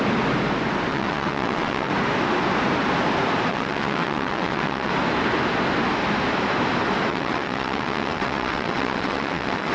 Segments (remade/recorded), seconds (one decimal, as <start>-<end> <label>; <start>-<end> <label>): 0.0-0.9 recorded; 0.9-1.9 remade; 1.9-3.5 recorded; 3.5-4.9 remade; 4.9-7.1 recorded; 7.1-9.7 remade

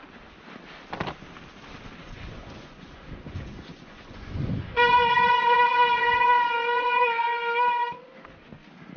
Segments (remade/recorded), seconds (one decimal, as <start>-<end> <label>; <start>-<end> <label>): 0.0-2.0 recorded; 2.0-7.2 remade; 7.2-9.0 recorded

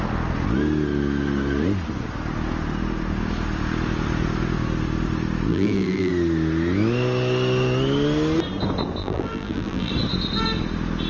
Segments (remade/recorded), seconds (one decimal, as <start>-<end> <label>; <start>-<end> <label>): 0.0-5.5 recorded; 5.5-6.1 remade; 6.1-9.0 recorded; 9.0-9.9 remade; 9.9-11.1 recorded